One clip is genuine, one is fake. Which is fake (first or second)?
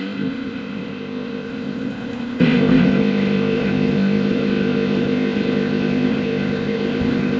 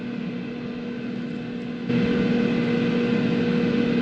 first